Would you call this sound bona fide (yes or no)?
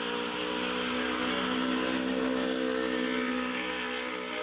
yes